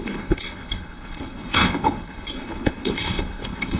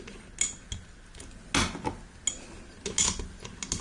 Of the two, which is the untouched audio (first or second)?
second